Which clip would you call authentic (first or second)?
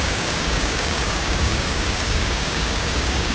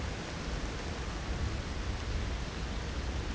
second